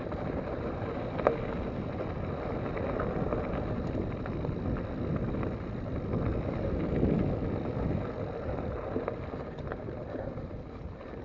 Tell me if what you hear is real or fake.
real